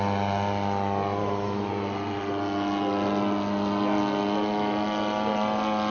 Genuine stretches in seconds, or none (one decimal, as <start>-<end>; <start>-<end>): 0.0-1.2; 1.7-5.9